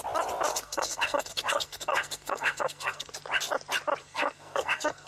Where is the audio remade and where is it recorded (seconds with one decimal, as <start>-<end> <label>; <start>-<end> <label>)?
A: 0.0-0.5 recorded; 0.5-3.1 remade; 3.1-4.0 recorded; 4.0-5.1 remade